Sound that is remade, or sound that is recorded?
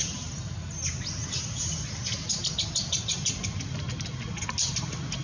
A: recorded